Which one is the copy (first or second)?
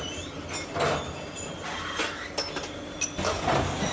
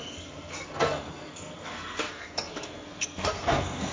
second